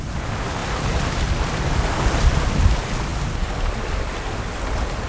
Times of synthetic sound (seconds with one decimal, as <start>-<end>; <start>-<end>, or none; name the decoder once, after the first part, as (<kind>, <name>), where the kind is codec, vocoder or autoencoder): none